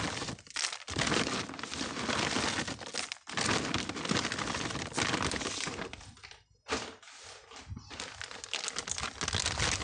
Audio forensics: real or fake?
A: real